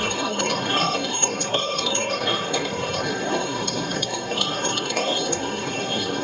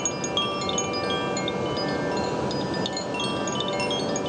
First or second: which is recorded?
second